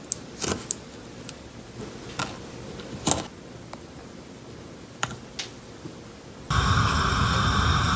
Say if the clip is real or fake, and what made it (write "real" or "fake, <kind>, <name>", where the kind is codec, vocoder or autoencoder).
real